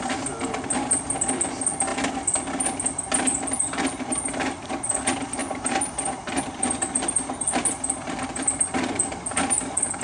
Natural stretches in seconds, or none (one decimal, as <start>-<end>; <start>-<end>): 0.0-10.0